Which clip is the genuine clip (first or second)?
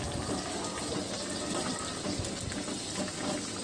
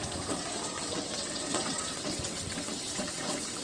first